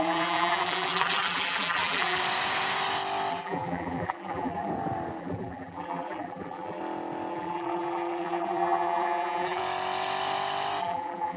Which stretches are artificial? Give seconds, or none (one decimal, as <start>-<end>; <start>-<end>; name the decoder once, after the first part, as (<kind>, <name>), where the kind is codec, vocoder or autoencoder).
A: 0.0-2.2 (vocoder, BigVGAN v2); 3.3-4.7; 5.2-6.8; 7.3-9.6; 10.8-11.4